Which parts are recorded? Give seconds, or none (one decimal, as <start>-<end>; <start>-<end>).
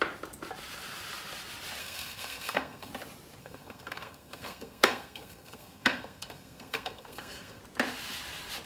0.0-1.8; 2.9-3.4; 7.6-8.7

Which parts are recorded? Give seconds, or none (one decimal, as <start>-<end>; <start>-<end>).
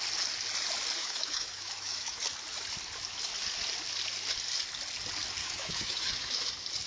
0.0-1.0; 2.2-5.4; 6.4-6.9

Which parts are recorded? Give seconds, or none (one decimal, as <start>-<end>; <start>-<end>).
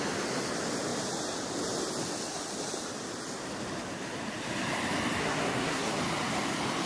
0.0-5.2; 6.0-6.9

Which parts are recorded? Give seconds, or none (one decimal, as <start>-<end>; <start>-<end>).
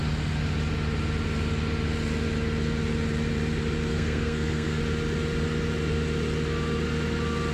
0.0-3.9; 4.8-7.5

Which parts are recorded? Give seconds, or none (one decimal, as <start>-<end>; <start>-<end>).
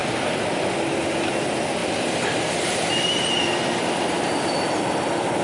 0.7-1.8; 4.5-5.4